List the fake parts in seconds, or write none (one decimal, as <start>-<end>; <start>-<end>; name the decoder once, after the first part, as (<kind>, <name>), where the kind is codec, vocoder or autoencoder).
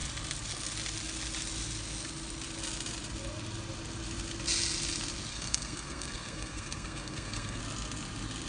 5.3-7.6 (codec, SNAC)